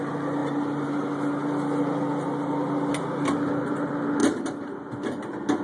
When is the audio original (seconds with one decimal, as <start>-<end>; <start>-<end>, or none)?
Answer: 0.0-4.2; 4.9-5.6